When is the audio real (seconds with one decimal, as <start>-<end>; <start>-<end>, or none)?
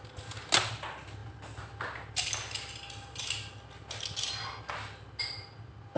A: 0.0-6.0